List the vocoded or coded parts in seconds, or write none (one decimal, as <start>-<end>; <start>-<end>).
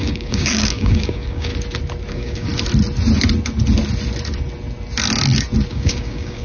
0.0-1.5; 2.1-2.5; 5.7-6.4